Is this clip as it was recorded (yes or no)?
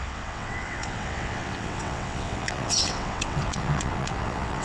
no